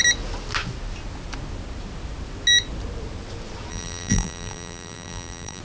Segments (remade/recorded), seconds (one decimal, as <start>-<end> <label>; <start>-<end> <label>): 0.0-3.7 recorded; 3.7-5.6 remade